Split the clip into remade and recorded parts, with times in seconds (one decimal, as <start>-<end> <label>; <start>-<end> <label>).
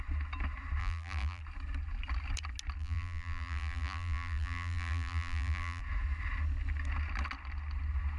0.0-0.8 recorded; 0.8-1.4 remade; 1.4-2.8 recorded; 2.8-5.8 remade; 5.8-8.2 recorded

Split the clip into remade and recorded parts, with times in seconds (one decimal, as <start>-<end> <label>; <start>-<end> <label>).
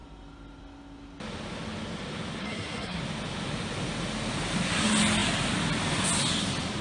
0.0-2.4 recorded; 2.4-3.0 remade; 3.0-6.8 recorded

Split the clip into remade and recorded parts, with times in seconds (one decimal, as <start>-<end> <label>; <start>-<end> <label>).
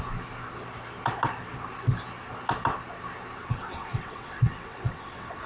0.0-3.4 recorded; 3.4-5.5 remade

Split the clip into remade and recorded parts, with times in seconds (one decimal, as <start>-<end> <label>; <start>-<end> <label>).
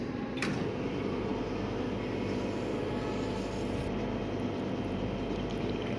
0.0-1.3 remade; 1.3-4.8 recorded; 4.8-6.0 remade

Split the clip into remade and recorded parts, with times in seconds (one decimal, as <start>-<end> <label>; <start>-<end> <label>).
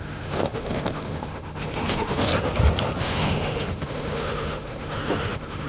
0.0-2.3 remade; 2.3-3.0 recorded; 3.0-5.7 remade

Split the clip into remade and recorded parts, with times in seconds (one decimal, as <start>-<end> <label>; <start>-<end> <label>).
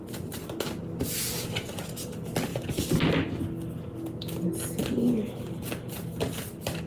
0.0-6.9 recorded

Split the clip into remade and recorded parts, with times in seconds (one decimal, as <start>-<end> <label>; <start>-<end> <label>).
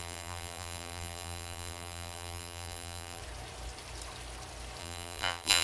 0.0-3.2 remade; 3.2-4.8 recorded; 4.8-5.6 remade